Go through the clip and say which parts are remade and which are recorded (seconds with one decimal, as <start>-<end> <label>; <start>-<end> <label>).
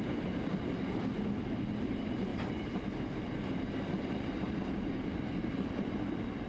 0.0-6.5 recorded